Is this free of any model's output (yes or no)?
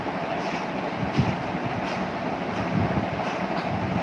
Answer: yes